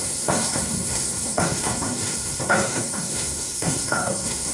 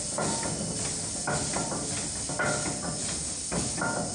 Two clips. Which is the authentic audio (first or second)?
second